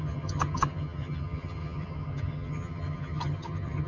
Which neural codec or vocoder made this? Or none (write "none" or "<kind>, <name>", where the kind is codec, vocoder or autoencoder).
vocoder, HiFi-GAN